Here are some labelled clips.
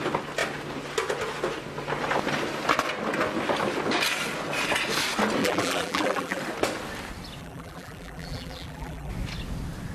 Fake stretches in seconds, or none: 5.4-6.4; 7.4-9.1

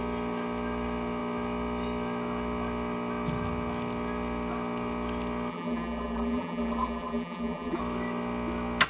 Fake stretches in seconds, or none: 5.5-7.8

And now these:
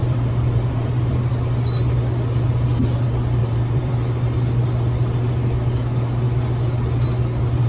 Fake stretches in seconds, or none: 0.0-1.3; 3.4-3.9

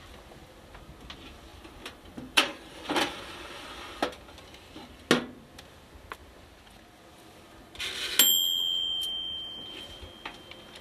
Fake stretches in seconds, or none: 1.5-3.2